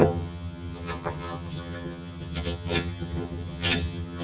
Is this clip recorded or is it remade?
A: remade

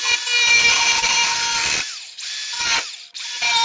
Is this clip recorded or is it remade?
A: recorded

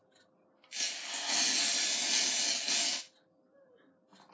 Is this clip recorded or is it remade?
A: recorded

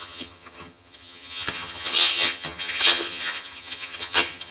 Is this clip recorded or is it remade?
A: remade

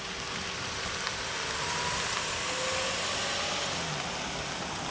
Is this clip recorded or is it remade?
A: recorded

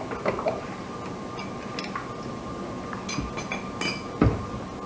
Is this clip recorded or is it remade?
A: recorded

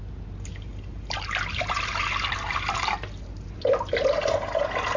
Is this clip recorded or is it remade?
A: recorded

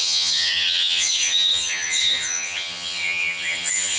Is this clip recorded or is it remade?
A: remade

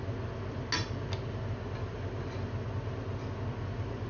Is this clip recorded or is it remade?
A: recorded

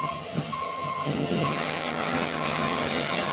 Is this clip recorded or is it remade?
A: remade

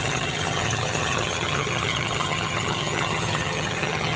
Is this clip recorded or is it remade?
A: remade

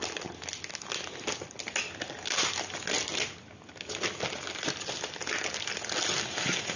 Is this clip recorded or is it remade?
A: recorded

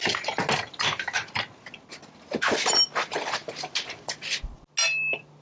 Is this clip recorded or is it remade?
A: recorded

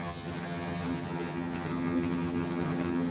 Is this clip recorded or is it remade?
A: remade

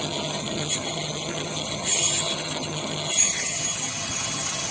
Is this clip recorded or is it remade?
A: remade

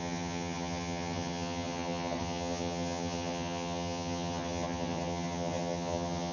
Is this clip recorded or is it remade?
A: remade